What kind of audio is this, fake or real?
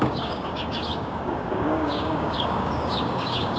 fake